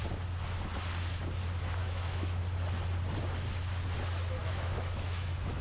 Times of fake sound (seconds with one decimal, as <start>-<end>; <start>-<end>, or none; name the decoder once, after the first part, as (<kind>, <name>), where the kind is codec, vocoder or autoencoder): 1.8-2.4 (autoencoder, DAC-VAE); 4.4-5.6